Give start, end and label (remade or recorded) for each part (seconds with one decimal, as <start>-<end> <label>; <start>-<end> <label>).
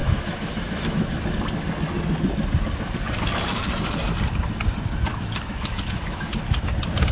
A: 0.0-1.1 remade; 1.1-5.1 recorded; 5.1-6.3 remade; 6.3-7.1 recorded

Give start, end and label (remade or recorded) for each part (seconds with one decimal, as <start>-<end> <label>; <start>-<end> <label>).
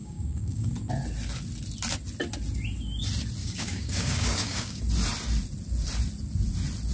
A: 0.0-0.7 remade; 0.7-3.4 recorded; 3.4-4.8 remade; 4.8-6.9 recorded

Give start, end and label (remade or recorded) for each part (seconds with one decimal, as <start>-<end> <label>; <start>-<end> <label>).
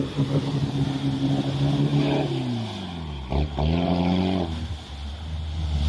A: 0.0-5.9 recorded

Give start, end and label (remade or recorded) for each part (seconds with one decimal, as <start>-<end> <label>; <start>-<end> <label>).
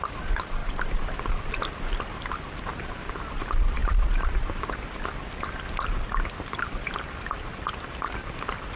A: 0.0-0.6 recorded; 0.6-2.2 remade; 2.2-3.8 recorded; 3.8-8.8 remade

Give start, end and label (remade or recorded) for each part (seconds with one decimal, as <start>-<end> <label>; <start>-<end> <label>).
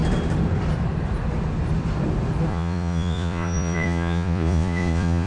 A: 0.0-2.5 recorded; 2.5-5.3 remade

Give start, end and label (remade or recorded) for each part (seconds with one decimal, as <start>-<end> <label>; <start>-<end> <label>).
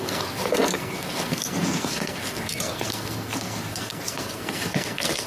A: 0.0-5.3 remade